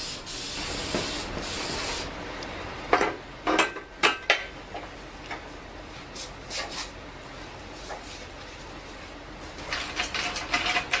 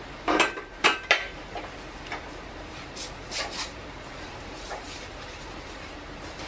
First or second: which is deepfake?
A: second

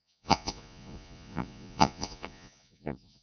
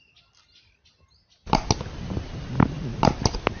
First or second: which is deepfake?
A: first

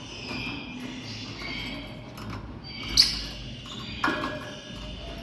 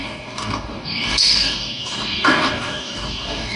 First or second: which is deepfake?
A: second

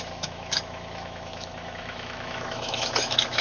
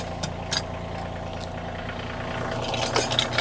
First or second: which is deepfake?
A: first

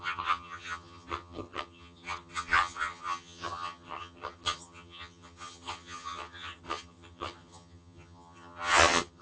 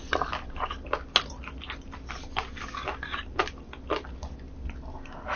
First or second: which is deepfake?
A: first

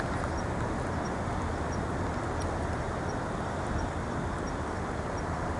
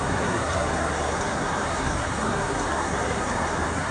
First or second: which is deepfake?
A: second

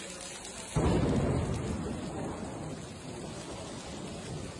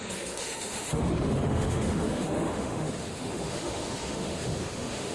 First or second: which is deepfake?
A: second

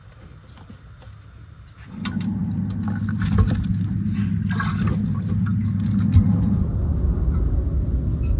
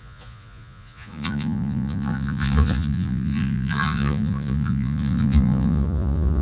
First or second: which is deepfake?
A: second